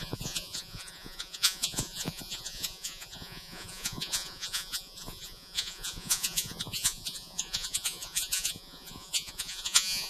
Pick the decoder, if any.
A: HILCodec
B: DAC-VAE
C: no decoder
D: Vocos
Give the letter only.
D